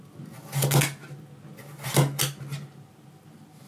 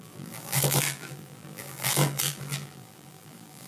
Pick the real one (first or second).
first